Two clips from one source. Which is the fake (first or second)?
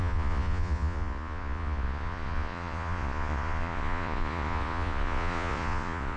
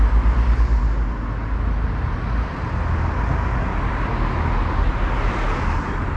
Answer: first